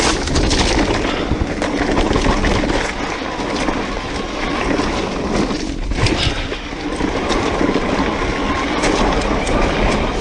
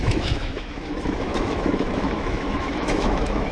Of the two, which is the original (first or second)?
first